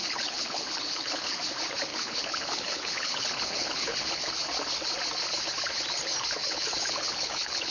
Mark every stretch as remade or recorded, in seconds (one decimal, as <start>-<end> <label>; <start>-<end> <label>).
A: 0.0-1.4 remade; 1.4-1.9 recorded; 1.9-4.3 remade; 4.3-6.4 recorded; 6.4-7.7 remade